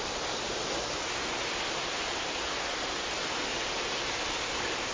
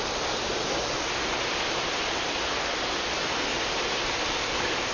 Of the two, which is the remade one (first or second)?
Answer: first